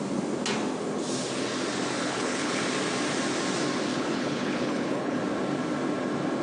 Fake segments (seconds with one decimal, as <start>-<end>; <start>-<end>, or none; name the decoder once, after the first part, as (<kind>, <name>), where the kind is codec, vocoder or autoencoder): 2.0-2.6 (codec, HILCodec); 3.9-5.2